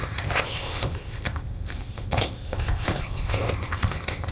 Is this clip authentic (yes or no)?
no